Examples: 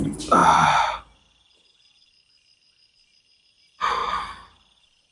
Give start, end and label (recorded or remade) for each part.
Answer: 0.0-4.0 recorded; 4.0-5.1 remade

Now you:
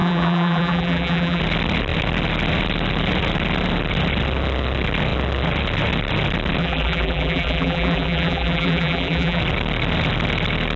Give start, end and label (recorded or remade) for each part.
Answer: 0.0-1.4 remade; 1.4-6.6 recorded; 6.6-9.4 remade; 9.4-10.8 recorded

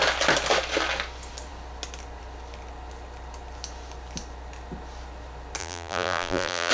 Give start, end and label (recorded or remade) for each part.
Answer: 0.0-5.6 recorded; 5.6-6.7 remade

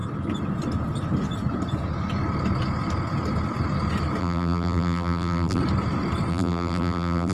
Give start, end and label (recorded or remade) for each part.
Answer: 0.0-4.2 recorded; 4.2-5.6 remade; 5.6-6.3 recorded; 6.3-7.3 remade

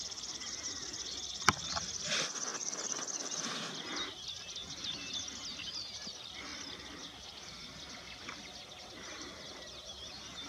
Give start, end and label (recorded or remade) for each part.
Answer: 0.0-2.5 recorded; 2.5-3.7 remade; 3.7-10.5 recorded

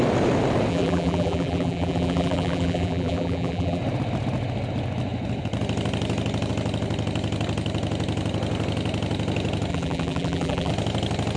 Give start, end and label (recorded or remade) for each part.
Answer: 0.0-0.7 recorded; 0.7-3.8 remade; 3.8-9.7 recorded; 9.7-10.7 remade; 10.7-11.4 recorded

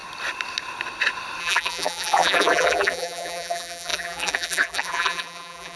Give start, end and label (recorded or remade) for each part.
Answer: 0.0-1.4 recorded; 1.4-5.8 remade